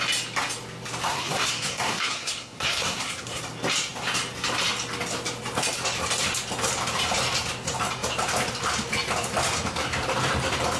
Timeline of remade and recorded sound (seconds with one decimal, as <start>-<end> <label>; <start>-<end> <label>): 0.0-1.1 recorded; 1.1-3.4 remade; 3.4-10.8 recorded